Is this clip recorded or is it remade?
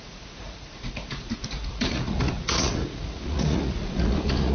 remade